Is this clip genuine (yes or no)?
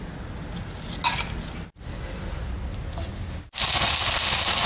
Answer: yes